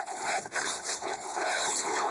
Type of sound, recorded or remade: remade